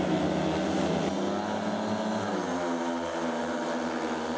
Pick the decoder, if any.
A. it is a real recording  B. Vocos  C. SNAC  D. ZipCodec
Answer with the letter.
A